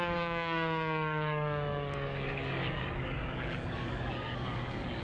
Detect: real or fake fake